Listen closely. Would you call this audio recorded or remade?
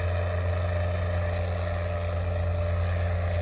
recorded